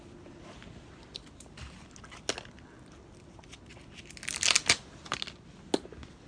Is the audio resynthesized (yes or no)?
no